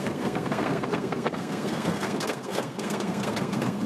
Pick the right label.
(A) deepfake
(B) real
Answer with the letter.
A